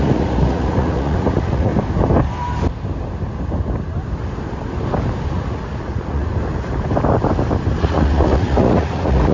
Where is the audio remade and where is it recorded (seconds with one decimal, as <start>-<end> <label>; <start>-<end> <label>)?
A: 0.0-1.7 remade; 1.7-5.3 recorded; 5.3-6.3 remade; 6.3-7.8 recorded; 7.8-9.3 remade